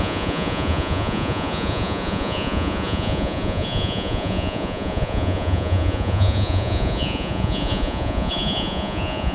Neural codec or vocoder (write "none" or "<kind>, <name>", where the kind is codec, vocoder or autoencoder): vocoder, Vocos